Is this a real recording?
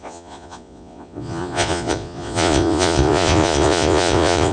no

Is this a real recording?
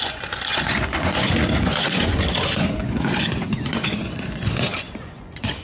no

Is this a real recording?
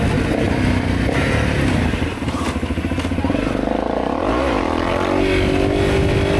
yes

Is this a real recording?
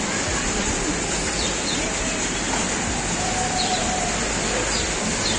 yes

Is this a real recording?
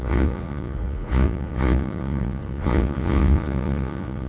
no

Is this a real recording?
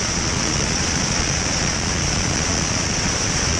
no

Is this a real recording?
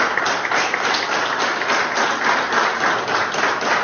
yes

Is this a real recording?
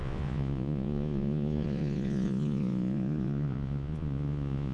no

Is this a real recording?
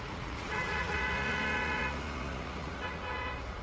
no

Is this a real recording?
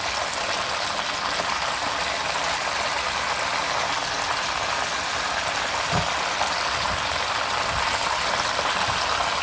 yes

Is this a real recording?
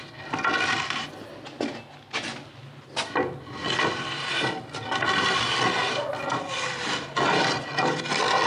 yes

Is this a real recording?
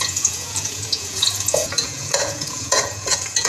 no